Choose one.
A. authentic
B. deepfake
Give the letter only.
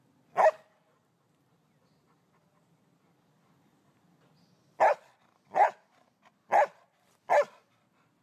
A